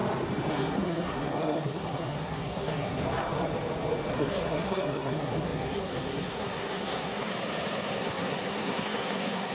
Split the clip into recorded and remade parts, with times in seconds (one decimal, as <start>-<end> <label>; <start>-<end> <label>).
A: 0.0-0.5 recorded; 0.5-3.0 remade; 3.0-4.1 recorded; 4.1-7.3 remade; 7.3-7.9 recorded; 7.9-9.5 remade